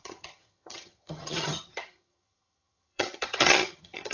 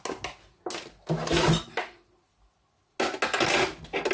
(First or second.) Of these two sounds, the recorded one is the second